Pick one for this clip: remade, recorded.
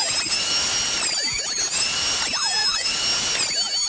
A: recorded